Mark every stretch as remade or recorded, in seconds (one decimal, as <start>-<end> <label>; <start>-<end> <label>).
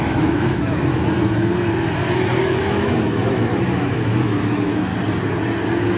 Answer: 0.0-0.9 remade; 0.9-2.6 recorded; 2.6-4.9 remade; 4.9-6.0 recorded